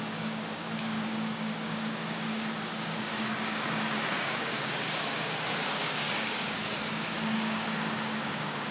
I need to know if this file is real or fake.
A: fake